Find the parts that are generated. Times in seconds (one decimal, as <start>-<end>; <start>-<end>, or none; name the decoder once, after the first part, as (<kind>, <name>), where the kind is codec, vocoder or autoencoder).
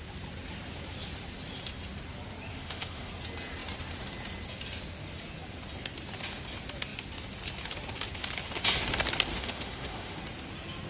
2.5-3.1 (autoencoder, DAC-VAE); 9.3-10.2